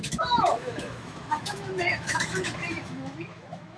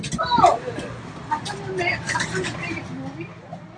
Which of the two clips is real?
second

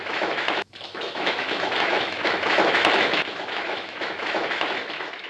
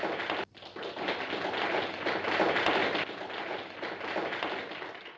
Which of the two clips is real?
second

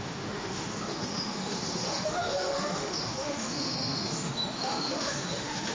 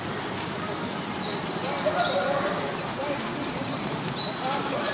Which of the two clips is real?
second